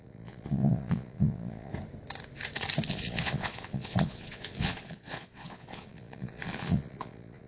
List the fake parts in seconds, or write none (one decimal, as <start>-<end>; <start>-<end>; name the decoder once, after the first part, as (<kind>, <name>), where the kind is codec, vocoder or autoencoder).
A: 0.0-1.7 (vocoder, Vocos); 2.9-7.5